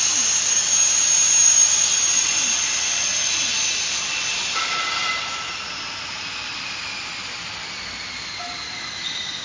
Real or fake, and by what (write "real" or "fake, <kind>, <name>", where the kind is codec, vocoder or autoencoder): fake, vocoder, BigVGAN v2